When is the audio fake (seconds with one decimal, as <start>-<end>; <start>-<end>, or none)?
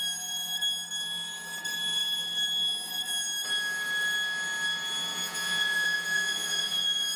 5.1-7.2